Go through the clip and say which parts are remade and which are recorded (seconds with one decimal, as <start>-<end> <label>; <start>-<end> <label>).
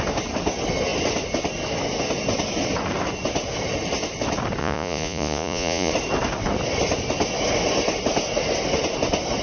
0.0-4.6 recorded; 4.6-5.9 remade; 5.9-9.4 recorded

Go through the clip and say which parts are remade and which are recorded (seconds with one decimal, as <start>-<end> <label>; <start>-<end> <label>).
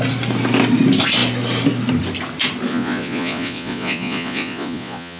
0.0-2.7 recorded; 2.7-5.2 remade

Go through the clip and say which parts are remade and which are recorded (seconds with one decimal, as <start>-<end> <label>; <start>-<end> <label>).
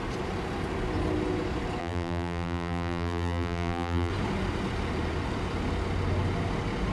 0.0-1.8 recorded; 1.8-4.1 remade; 4.1-6.9 recorded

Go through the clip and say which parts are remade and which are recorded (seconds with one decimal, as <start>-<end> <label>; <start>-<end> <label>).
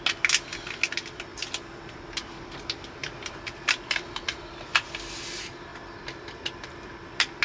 0.0-3.0 recorded; 3.0-4.2 remade; 4.2-5.7 recorded; 5.7-7.4 remade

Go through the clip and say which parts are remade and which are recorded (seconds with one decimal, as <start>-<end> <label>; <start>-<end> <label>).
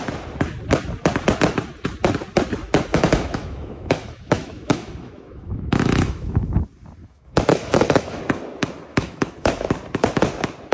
0.0-2.9 recorded; 2.9-6.5 remade; 6.5-7.0 recorded; 7.0-8.2 remade; 8.2-8.9 recorded; 8.9-9.7 remade; 9.7-10.7 recorded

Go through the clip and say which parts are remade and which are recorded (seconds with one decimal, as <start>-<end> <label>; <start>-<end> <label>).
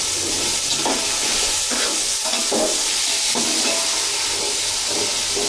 0.0-1.2 recorded; 1.2-2.4 remade; 2.4-5.5 recorded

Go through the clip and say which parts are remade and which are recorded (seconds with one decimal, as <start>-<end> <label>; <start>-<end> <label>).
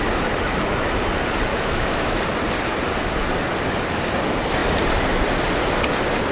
0.0-1.5 recorded; 1.5-2.2 remade; 2.2-6.3 recorded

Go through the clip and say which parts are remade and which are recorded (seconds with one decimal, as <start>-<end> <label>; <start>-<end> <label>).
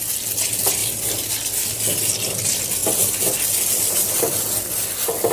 0.0-5.3 recorded